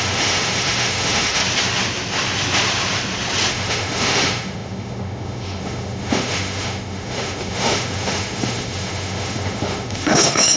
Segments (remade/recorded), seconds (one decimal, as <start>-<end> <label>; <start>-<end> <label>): 0.0-1.4 remade; 1.4-3.5 recorded; 3.5-10.6 remade

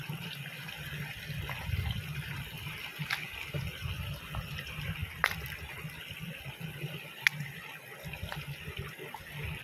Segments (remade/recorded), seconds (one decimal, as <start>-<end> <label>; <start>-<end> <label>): 0.0-9.6 recorded